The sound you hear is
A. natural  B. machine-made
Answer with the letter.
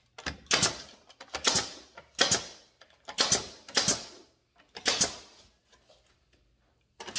A